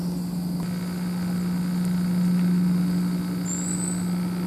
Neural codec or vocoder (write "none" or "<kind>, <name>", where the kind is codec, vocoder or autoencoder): none